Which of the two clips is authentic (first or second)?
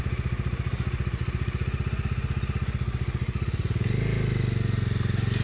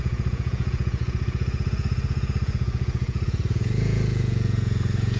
first